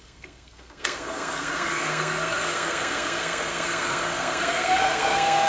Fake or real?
fake